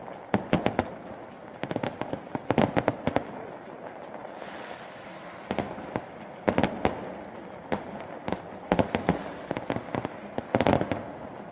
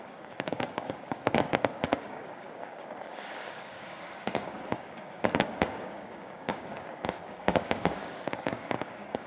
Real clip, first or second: first